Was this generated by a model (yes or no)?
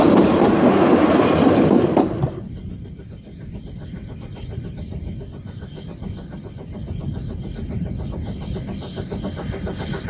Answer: no